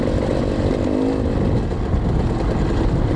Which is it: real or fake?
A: real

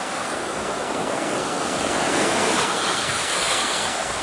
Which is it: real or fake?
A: fake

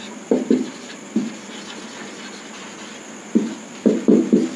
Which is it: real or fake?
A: real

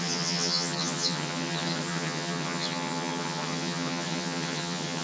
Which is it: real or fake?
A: fake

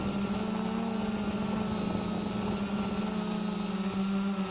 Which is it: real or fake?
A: real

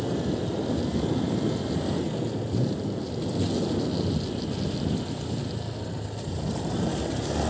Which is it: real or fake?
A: real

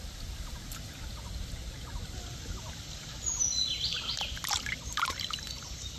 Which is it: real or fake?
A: real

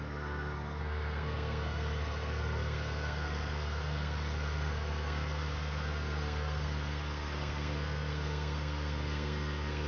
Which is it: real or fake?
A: fake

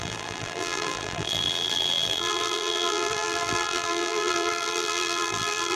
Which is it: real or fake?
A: fake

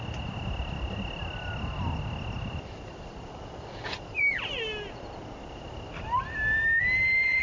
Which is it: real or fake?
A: real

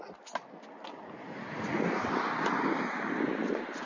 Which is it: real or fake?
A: real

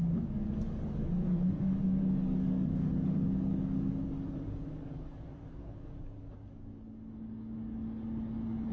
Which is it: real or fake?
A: fake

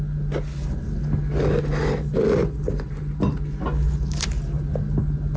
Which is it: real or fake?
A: real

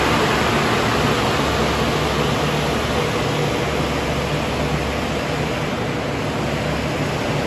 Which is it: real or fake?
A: real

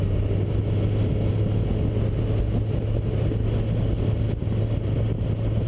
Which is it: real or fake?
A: real